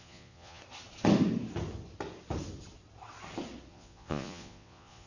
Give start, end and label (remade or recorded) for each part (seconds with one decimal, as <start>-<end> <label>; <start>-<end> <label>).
0.0-0.6 remade; 0.6-3.7 recorded; 3.7-5.1 remade